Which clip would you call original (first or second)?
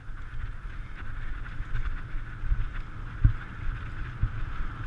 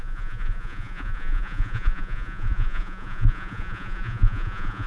first